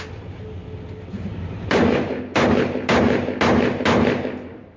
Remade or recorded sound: recorded